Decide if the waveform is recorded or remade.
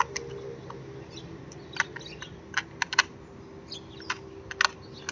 recorded